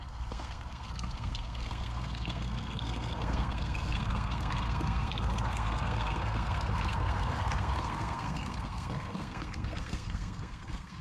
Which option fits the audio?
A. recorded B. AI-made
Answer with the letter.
B